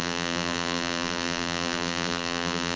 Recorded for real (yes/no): no